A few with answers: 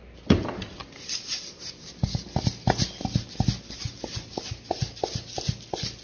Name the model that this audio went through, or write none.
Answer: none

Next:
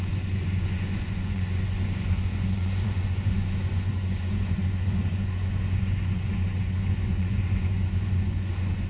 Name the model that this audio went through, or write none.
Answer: vocoder, Vocos